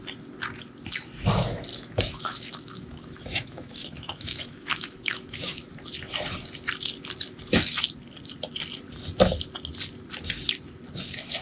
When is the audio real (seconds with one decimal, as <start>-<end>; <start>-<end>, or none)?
0.0-1.7; 5.7-11.4